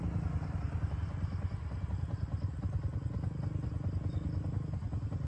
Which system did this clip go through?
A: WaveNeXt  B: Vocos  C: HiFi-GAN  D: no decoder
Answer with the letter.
D